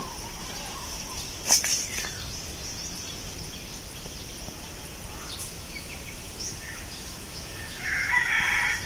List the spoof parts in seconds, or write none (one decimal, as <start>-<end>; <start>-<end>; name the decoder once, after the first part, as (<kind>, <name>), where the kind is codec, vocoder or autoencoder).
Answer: 5.4-8.3 (autoencoder, DAC-VAE)